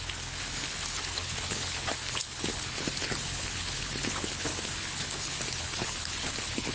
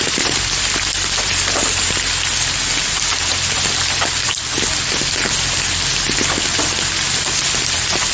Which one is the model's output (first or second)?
first